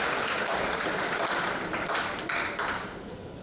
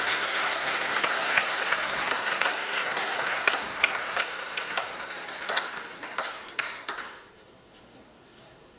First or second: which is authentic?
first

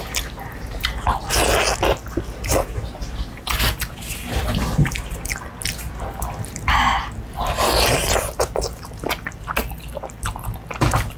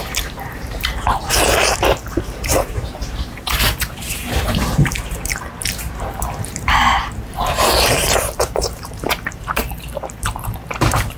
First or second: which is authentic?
first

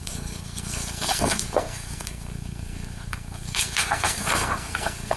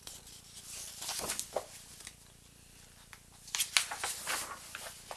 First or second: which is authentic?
second